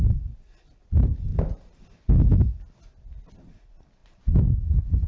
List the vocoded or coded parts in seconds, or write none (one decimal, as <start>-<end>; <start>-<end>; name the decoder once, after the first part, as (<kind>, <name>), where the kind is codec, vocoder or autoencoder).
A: 1.3-1.8 (vocoder, BigVGAN v2); 4.0-5.1

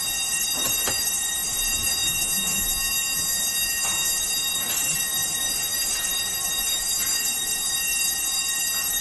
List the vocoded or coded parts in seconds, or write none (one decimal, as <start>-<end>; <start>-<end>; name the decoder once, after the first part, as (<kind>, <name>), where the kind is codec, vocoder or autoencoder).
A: 0.0-2.0 (vocoder, BigVGAN v2); 4.2-9.0

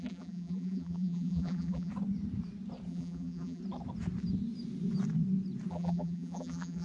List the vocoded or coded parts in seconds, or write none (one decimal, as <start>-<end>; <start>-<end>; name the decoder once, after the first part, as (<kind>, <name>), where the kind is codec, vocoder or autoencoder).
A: 0.0-1.9 (vocoder, BigVGAN v2); 2.9-3.6; 5.7-6.8

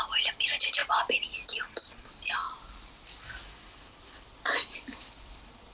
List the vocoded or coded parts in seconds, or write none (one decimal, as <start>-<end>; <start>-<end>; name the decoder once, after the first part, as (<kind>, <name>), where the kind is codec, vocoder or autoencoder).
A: 0.0-0.8 (vocoder, BigVGAN v2); 3.7-5.7

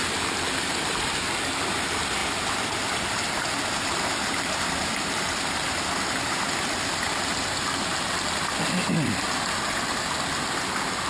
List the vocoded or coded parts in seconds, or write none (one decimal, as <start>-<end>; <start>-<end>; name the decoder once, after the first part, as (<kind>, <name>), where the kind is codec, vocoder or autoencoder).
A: 0.0-1.2 (vocoder, BigVGAN v2); 2.2-7.1